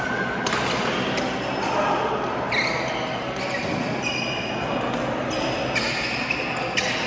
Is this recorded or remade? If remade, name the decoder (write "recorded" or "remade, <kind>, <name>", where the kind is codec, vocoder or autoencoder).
recorded